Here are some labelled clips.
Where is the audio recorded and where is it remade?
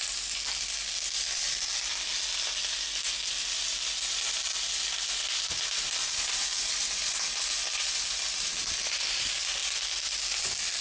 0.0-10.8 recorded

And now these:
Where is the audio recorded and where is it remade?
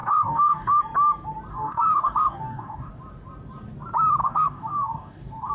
0.0-0.8 remade; 0.8-1.5 recorded; 1.5-2.9 remade; 2.9-4.2 recorded; 4.2-5.5 remade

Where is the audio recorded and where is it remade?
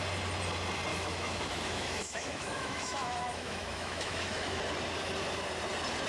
0.0-0.9 recorded; 0.9-4.6 remade; 4.6-6.1 recorded